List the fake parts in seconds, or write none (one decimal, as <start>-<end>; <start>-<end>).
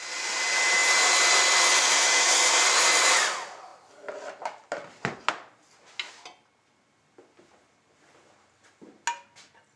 none